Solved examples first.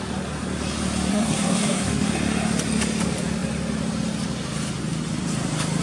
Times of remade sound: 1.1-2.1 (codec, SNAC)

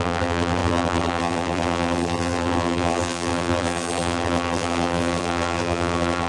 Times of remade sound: 0.0-6.3 (vocoder, BigVGAN v2)